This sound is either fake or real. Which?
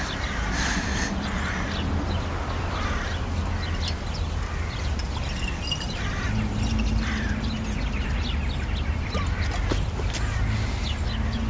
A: real